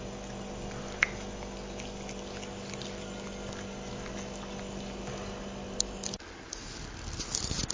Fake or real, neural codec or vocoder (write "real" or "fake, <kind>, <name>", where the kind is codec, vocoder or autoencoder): real